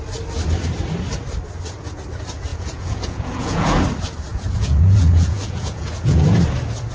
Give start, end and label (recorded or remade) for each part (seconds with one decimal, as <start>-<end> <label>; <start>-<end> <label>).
0.0-2.5 recorded; 2.5-3.8 remade; 3.8-4.3 recorded; 4.3-6.2 remade; 6.2-6.9 recorded